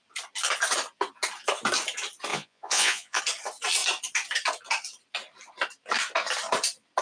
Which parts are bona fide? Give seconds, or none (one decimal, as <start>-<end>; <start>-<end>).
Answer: 0.0-2.3; 3.2-7.0